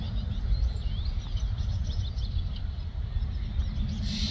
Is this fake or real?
real